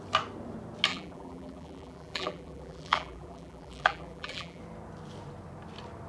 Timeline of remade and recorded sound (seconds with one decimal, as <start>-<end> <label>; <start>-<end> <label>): 0.0-0.9 recorded; 0.9-4.6 remade; 4.6-6.1 recorded